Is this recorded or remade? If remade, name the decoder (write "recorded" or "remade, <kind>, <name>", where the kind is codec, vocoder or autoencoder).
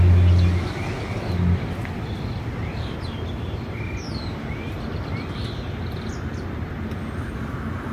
recorded